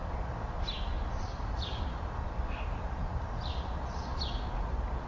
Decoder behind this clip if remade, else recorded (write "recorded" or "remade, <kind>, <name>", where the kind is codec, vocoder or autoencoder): recorded